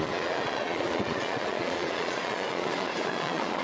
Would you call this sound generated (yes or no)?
yes